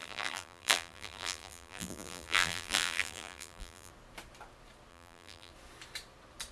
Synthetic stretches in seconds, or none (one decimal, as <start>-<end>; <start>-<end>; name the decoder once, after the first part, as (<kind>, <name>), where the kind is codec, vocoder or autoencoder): 0.0-3.9 (vocoder, BigVGAN v2); 4.9-5.5